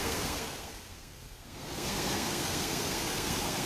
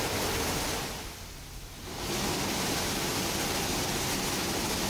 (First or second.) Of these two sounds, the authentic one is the second